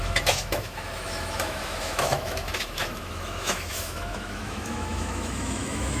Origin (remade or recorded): remade